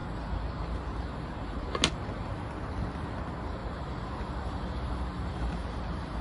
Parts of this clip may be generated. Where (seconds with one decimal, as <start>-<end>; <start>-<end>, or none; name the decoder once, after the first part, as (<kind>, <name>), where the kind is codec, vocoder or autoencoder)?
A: none